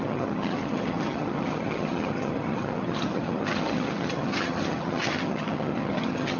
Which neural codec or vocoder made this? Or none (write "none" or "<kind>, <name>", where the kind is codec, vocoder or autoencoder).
vocoder, HiFi-GAN